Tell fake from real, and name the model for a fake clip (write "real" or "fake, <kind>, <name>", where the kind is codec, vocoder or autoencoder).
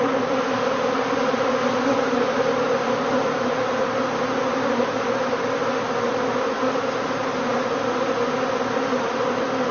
real